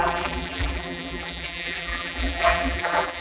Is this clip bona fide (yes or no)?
no